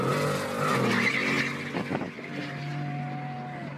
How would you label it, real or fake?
real